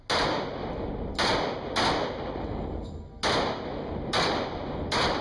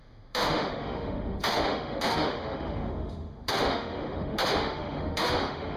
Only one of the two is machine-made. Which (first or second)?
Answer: second